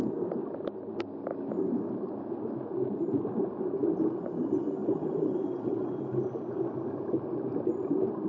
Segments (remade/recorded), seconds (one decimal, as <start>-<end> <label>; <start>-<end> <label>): 0.0-4.8 recorded; 4.8-5.4 remade; 5.4-8.3 recorded